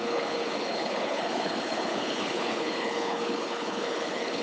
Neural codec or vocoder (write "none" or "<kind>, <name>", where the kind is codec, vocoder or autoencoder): codec, HILCodec